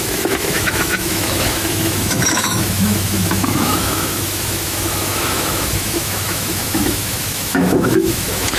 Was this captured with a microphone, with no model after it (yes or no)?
no